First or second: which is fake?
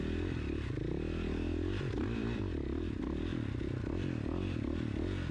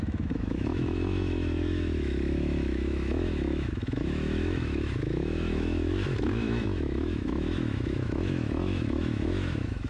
second